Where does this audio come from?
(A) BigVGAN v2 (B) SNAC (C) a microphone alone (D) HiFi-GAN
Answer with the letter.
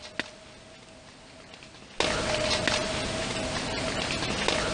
C